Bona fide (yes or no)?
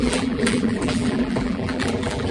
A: no